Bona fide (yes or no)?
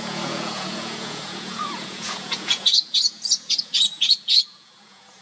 no